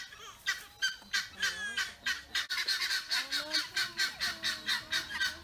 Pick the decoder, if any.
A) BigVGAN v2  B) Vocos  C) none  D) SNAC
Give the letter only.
C